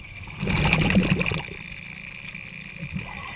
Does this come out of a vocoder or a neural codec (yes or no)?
no